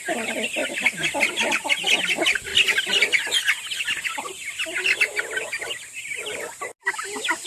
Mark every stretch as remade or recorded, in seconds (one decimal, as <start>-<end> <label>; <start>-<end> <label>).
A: 0.0-7.5 recorded

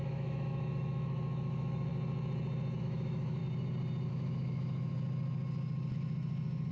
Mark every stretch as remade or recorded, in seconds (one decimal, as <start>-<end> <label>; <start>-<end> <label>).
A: 0.0-1.9 remade; 1.9-2.8 recorded; 2.8-3.4 remade; 3.4-4.1 recorded; 4.1-4.9 remade; 4.9-6.7 recorded

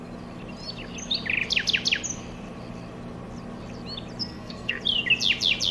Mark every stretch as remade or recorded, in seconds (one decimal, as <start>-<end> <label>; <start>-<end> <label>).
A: 0.0-4.2 recorded; 4.2-4.8 remade; 4.8-5.7 recorded